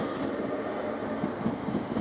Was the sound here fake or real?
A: real